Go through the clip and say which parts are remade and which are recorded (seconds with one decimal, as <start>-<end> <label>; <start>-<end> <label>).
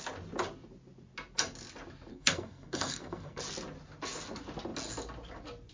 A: 0.0-2.1 recorded; 2.1-3.4 remade; 3.4-5.7 recorded